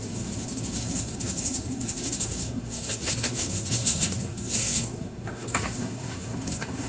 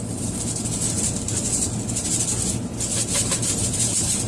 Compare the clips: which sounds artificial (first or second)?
first